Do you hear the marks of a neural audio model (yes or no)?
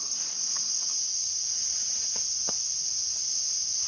no